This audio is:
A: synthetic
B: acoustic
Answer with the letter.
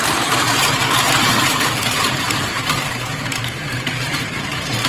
A